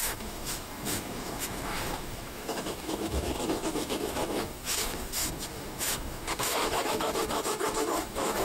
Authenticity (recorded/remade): remade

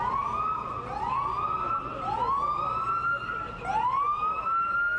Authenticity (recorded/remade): recorded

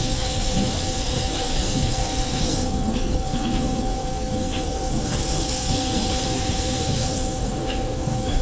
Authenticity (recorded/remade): remade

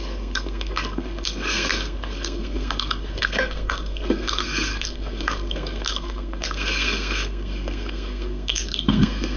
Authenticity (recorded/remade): remade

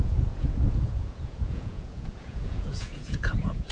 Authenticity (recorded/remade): remade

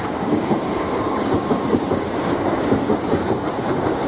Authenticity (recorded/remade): remade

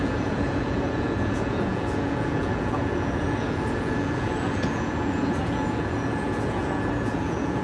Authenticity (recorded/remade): remade